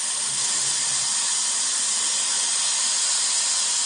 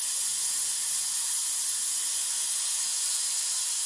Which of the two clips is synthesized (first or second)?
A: second